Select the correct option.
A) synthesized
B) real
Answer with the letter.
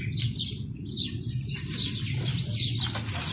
B